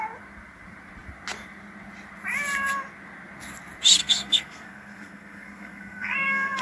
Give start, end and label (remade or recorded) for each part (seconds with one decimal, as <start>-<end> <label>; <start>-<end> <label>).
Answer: 0.0-4.0 recorded; 4.0-6.6 remade